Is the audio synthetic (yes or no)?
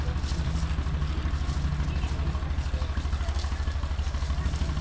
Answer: no